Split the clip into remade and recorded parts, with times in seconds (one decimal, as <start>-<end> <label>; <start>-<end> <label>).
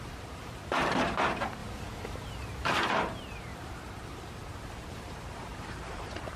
0.0-1.6 remade; 1.6-2.7 recorded; 2.7-3.5 remade; 3.5-4.7 recorded; 4.7-6.4 remade